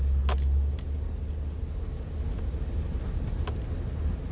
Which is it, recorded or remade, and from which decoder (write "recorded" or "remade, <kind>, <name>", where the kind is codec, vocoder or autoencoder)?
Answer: recorded